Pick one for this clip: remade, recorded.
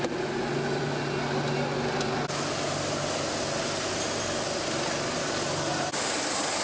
recorded